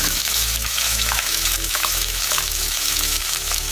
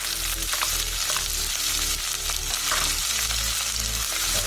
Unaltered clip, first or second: second